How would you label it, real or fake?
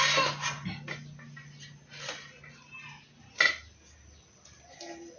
real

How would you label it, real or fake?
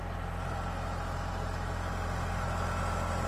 real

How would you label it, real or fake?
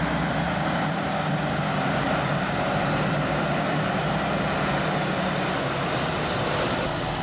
real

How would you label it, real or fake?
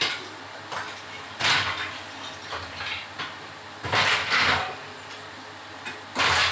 real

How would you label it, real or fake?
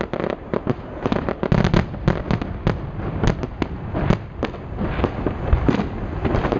real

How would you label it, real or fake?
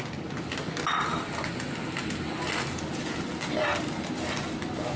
real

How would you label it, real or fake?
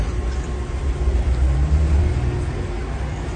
real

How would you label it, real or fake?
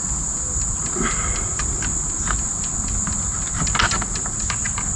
real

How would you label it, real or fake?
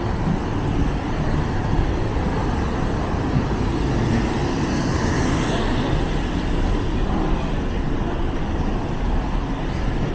real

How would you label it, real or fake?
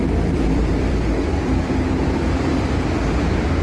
fake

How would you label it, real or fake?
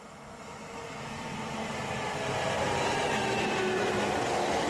real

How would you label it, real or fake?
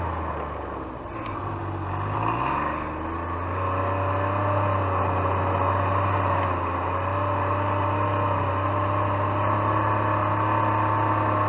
real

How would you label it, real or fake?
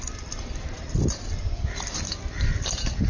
fake